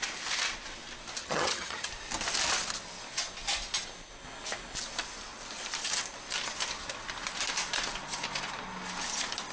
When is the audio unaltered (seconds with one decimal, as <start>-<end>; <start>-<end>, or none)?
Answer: 0.0-1.2; 1.9-9.5